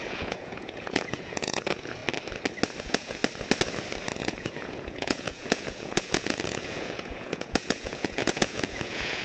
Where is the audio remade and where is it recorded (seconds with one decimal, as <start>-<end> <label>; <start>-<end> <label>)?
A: 0.0-2.0 remade; 2.0-2.8 recorded; 2.8-3.2 remade; 3.2-4.2 recorded; 4.2-9.2 remade